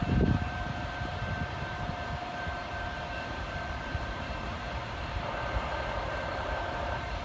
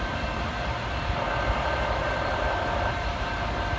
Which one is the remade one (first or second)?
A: first